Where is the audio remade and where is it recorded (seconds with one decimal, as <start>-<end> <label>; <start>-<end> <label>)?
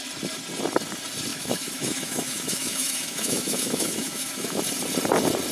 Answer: 0.0-1.3 recorded; 1.3-4.6 remade; 4.6-5.5 recorded